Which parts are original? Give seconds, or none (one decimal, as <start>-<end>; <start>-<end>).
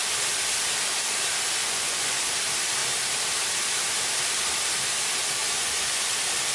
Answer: 0.0-1.6; 2.3-5.4; 6.1-6.5